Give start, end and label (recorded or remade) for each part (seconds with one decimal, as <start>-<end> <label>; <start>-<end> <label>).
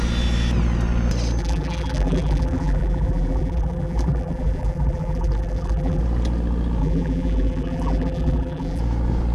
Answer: 0.0-1.4 recorded; 1.4-6.0 remade; 6.0-6.8 recorded; 6.8-8.8 remade; 8.8-9.3 recorded